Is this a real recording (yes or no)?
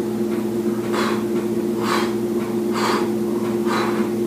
yes